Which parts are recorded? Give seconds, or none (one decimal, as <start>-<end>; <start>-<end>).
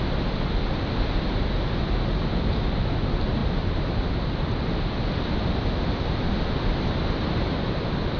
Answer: 0.0-8.2